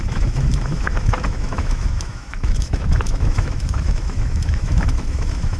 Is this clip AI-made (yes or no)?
yes